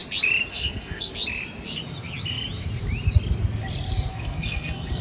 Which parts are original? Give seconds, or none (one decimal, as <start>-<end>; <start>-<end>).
0.0-0.5; 1.1-4.1

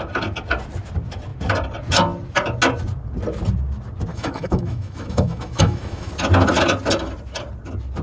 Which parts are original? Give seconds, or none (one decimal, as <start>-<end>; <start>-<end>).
0.0-4.1; 6.1-8.0

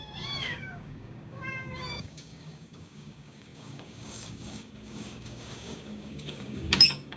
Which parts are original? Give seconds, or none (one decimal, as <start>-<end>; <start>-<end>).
none